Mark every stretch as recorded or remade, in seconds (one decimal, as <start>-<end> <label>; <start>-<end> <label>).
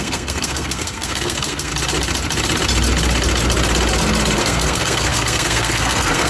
0.0-1.7 remade; 1.7-4.4 recorded; 4.4-6.3 remade